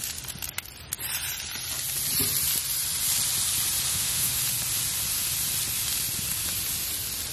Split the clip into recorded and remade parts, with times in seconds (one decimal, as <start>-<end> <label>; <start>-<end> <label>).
0.0-3.9 recorded; 3.9-4.4 remade; 4.4-7.3 recorded